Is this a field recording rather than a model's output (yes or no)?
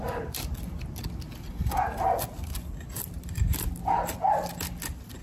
yes